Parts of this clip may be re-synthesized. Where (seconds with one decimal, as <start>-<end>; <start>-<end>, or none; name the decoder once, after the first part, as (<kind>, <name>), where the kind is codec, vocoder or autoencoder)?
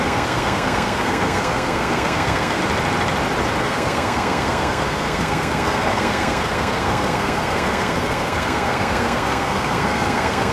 0.0-2.6 (codec, SNAC); 3.6-10.5